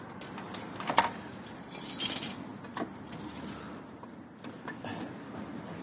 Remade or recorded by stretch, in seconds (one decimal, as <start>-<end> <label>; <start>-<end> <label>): 0.0-5.8 recorded